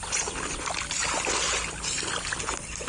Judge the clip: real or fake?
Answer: real